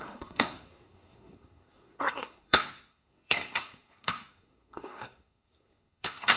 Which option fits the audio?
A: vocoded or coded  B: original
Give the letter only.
A